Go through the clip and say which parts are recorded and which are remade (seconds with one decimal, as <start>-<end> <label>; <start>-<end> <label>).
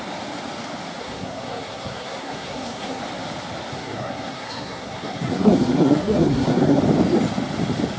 0.0-1.0 recorded; 1.0-3.0 remade; 3.0-3.7 recorded; 3.7-6.8 remade; 6.8-8.0 recorded